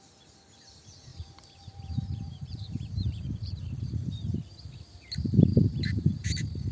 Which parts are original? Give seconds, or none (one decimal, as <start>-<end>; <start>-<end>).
0.0-1.1; 4.4-5.5; 6.3-6.7